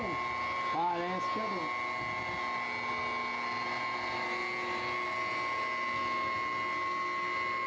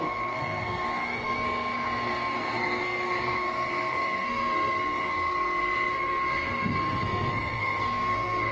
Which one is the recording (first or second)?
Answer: first